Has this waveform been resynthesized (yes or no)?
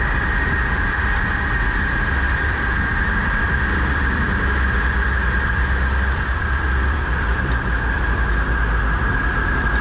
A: yes